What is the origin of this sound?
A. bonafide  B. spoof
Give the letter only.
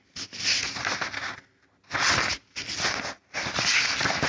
A